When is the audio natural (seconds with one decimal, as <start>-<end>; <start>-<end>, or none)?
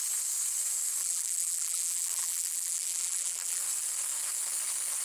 0.0-1.0; 3.6-5.0